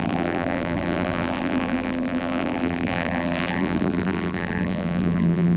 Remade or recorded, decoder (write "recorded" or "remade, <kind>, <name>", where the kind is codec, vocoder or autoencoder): remade, vocoder, BigVGAN v2